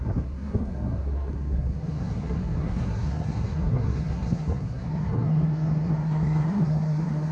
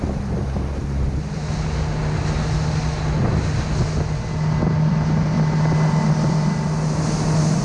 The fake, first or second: first